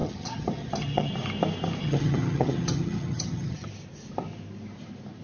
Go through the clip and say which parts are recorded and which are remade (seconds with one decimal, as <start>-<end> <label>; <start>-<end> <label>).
0.0-1.1 remade; 1.1-1.8 recorded; 1.8-3.7 remade; 3.7-5.2 recorded